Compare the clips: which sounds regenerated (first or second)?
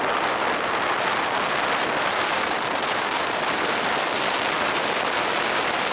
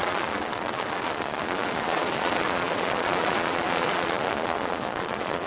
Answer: second